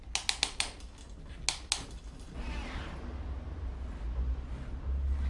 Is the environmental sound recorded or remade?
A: recorded